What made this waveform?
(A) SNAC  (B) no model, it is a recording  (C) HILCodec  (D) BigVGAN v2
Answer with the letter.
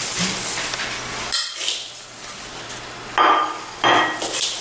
B